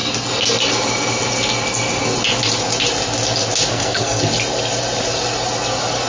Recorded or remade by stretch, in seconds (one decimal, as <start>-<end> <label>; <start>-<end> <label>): 0.0-3.7 recorded; 3.7-4.2 remade; 4.2-6.1 recorded